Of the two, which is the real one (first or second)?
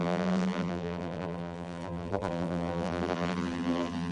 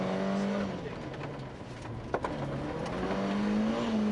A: second